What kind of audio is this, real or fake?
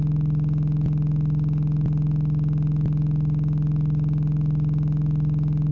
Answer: real